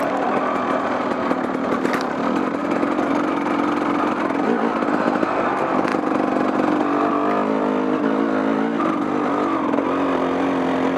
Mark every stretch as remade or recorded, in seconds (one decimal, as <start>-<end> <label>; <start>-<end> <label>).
0.0-11.0 recorded